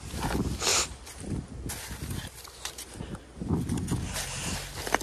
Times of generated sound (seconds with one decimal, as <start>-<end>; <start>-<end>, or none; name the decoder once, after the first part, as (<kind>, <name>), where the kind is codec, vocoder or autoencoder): none